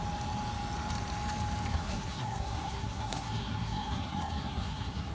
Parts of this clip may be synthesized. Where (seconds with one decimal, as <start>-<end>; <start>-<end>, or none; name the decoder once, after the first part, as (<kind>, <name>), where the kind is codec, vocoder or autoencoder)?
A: 1.7-5.1 (codec, SNAC)